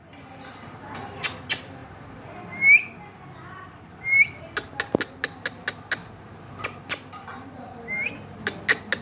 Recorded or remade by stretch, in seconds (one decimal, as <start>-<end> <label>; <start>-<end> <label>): 0.0-9.0 recorded